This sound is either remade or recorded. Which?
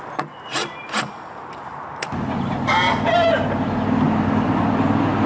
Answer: recorded